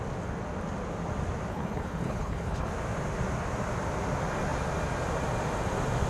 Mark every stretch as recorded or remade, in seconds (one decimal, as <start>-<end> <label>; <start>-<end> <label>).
0.0-1.5 recorded; 1.5-2.7 remade; 2.7-6.1 recorded